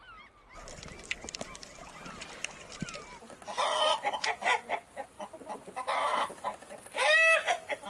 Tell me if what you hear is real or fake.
real